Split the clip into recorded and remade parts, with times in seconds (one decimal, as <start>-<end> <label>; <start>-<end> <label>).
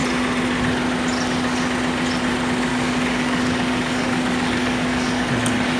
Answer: 0.0-2.7 recorded; 2.7-5.3 remade; 5.3-5.8 recorded